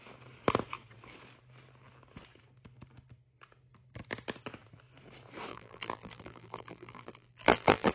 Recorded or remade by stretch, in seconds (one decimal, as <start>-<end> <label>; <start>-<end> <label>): 0.0-5.5 recorded; 5.5-7.9 remade